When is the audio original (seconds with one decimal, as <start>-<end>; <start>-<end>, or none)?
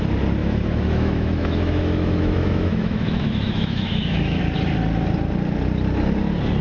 0.0-0.4; 4.4-6.6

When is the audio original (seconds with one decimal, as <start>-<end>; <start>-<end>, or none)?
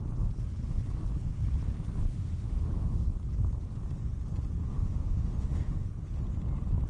0.0-2.1; 3.0-4.6; 5.9-6.9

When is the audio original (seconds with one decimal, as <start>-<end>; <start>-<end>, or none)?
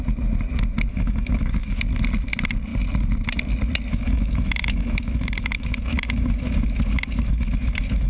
0.0-0.9; 1.8-3.9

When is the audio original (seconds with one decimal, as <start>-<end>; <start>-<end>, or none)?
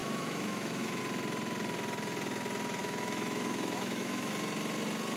1.0-2.8; 4.3-5.2